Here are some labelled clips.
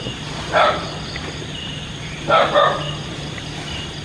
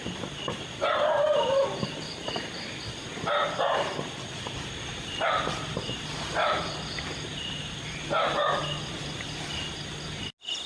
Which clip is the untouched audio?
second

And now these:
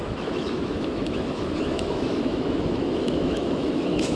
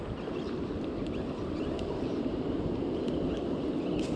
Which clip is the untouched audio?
second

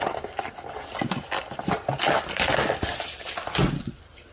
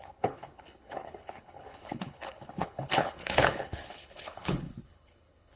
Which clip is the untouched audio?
first